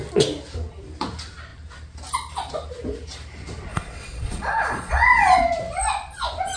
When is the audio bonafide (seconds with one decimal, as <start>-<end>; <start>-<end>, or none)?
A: 0.0-3.7; 5.4-6.6